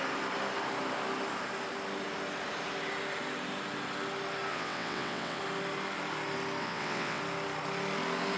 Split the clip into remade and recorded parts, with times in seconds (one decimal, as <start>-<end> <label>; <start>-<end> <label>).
0.0-4.5 recorded; 4.5-5.4 remade; 5.4-6.6 recorded; 6.6-7.2 remade; 7.2-8.4 recorded